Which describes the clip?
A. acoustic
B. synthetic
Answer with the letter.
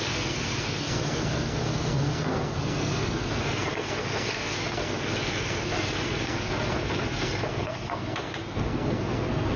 B